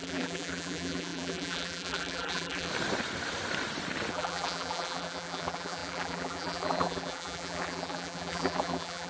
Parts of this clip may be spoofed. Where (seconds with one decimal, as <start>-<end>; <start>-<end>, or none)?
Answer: 0.0-2.7; 4.1-9.1